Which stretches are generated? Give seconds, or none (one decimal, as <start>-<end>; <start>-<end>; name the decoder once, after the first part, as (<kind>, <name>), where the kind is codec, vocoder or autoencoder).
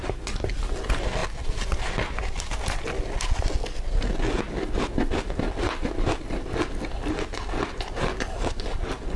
none